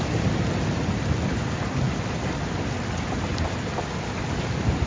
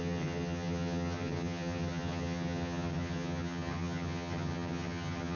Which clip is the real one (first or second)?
first